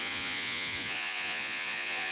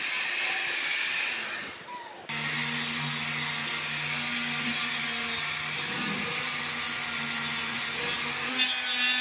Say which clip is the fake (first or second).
first